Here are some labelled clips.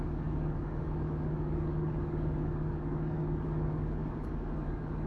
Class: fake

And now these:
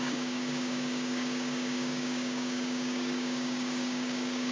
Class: fake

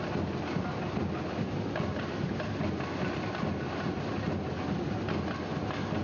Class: real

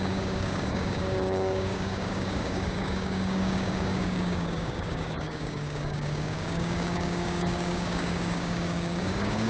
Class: fake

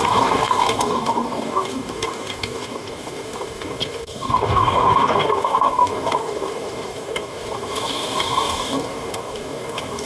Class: fake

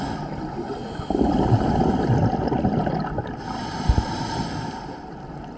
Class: real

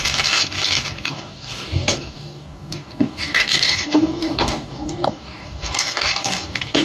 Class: fake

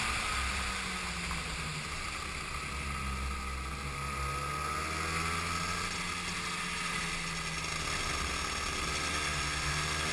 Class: real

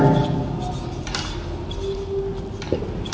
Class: real